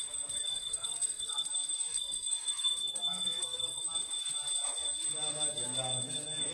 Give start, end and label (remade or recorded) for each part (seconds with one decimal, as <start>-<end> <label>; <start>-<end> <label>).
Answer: 0.0-0.5 recorded; 0.5-1.5 remade; 1.5-1.9 recorded; 1.9-3.8 remade; 3.8-6.5 recorded